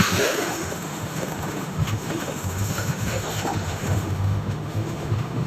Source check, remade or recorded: remade